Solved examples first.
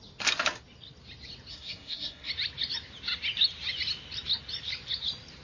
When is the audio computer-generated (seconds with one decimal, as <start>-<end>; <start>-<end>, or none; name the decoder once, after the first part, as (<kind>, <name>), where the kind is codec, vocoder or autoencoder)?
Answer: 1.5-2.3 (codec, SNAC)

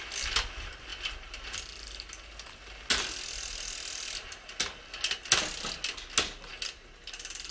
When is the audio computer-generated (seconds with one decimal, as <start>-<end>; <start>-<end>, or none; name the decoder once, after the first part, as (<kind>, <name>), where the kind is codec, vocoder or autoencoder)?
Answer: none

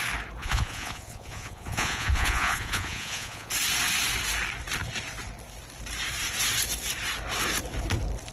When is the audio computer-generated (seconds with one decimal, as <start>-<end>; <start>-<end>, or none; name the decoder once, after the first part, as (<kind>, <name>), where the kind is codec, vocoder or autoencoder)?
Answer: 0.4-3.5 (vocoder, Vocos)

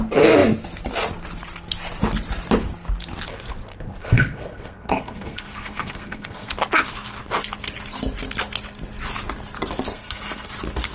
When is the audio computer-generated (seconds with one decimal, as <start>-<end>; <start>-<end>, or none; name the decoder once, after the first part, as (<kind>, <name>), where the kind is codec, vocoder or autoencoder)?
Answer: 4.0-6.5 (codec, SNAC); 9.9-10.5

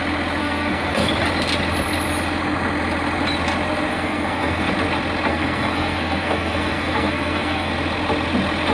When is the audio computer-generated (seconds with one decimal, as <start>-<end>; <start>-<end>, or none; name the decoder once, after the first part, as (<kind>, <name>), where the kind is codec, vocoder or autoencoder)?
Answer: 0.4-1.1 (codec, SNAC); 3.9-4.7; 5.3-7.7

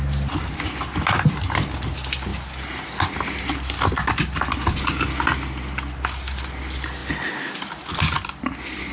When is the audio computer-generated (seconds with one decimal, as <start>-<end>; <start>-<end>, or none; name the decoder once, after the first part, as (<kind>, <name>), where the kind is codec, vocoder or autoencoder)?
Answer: none